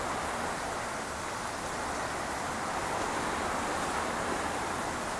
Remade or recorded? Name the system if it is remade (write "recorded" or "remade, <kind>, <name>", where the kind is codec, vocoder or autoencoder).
recorded